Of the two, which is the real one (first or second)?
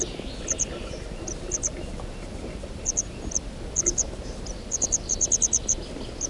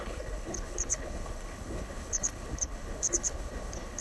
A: first